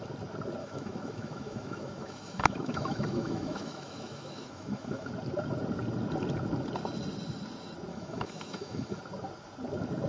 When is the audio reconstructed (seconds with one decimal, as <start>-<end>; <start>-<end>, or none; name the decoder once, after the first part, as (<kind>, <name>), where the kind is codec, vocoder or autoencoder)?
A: 0.6-5.1 (autoencoder, DAC-VAE); 7.9-9.0